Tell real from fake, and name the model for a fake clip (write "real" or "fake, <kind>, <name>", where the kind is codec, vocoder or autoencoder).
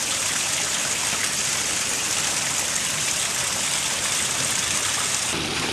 real